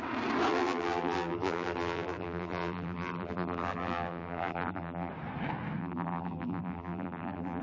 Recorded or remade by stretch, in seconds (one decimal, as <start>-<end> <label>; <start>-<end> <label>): 0.0-0.5 recorded; 0.5-5.1 remade; 5.1-5.8 recorded; 5.8-7.6 remade